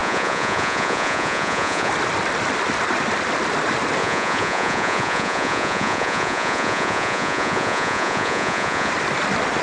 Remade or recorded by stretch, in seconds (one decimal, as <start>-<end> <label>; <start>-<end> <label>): 0.0-1.9 remade; 1.9-4.0 recorded; 4.0-8.9 remade; 8.9-9.6 recorded

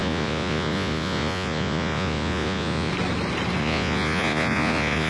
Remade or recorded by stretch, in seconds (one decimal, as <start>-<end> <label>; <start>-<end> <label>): 0.0-2.9 remade; 2.9-3.6 recorded; 3.6-5.1 remade

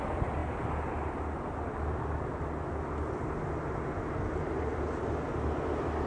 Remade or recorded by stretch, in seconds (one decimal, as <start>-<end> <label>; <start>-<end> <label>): 0.0-6.1 recorded

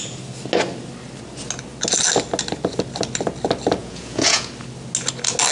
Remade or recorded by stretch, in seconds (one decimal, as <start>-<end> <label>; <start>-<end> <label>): 0.0-3.8 recorded; 3.8-4.5 remade; 4.5-5.5 recorded

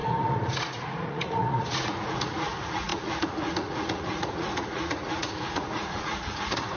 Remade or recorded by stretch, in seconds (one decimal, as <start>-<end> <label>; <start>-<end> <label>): 0.0-6.8 remade

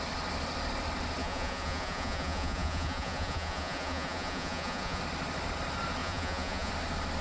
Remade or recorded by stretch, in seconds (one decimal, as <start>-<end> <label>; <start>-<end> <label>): 0.0-1.2 recorded; 1.2-5.0 remade; 5.0-6.0 recorded; 6.0-6.7 remade; 6.7-7.2 recorded

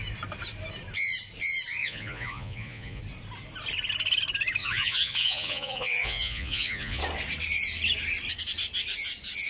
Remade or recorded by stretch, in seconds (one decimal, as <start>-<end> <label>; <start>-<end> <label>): 0.0-1.8 recorded; 1.8-3.0 remade; 3.0-4.6 recorded; 4.6-7.0 remade; 7.0-9.5 recorded

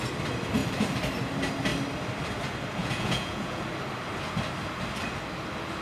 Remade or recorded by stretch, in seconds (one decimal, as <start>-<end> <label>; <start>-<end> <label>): 0.0-2.8 recorded; 2.8-3.6 remade; 3.6-5.8 recorded